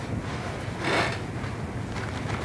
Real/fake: real